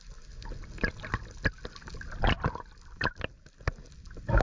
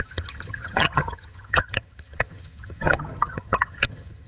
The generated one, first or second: second